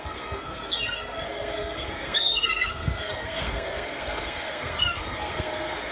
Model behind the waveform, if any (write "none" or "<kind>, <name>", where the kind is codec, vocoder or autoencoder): codec, SNAC